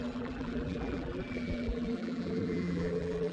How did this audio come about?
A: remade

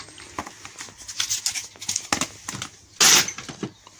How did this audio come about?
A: recorded